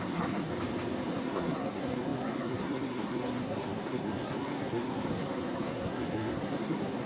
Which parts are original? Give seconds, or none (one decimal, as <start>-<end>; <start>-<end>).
0.5-1.1